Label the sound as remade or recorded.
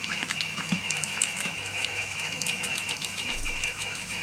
remade